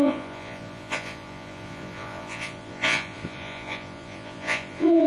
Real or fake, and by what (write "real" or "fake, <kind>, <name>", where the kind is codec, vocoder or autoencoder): fake, vocoder, Vocos